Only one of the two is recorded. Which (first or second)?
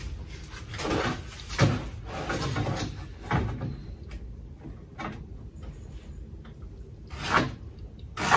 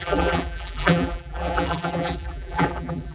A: first